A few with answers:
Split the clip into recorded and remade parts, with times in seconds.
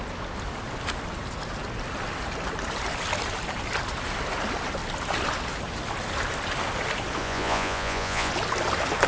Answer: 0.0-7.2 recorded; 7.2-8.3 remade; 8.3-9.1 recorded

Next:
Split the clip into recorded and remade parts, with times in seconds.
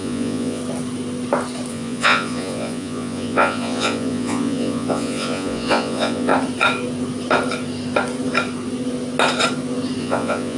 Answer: 0.0-0.6 remade; 0.6-1.7 recorded; 1.7-6.3 remade; 6.3-10.0 recorded; 10.0-10.6 remade